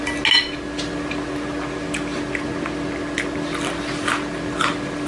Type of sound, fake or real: real